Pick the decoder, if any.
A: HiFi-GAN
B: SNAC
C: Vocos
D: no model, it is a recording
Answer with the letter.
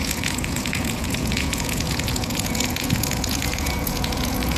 C